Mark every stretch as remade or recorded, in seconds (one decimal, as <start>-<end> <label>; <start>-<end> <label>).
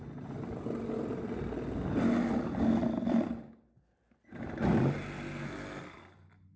0.0-6.6 recorded